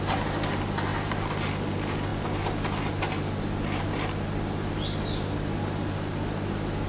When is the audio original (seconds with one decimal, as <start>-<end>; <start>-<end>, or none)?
0.0-6.9